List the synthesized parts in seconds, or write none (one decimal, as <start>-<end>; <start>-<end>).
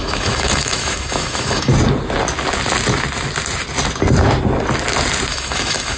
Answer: 0.0-1.7; 5.3-6.0